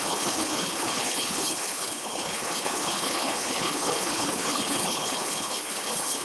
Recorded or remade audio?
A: remade